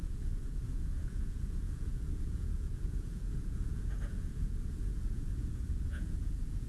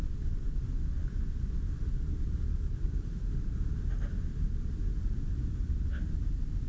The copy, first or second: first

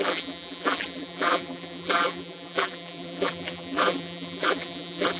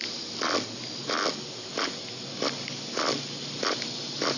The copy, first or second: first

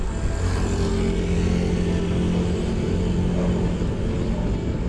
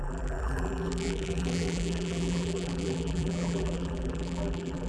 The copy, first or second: second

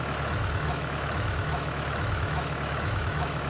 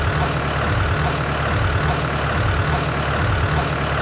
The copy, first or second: first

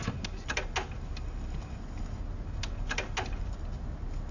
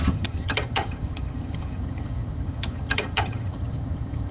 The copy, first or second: second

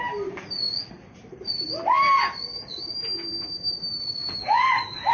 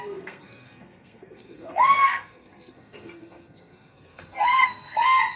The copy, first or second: second